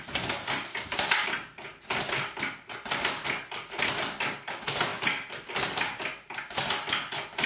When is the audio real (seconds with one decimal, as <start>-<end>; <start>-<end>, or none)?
0.0-7.5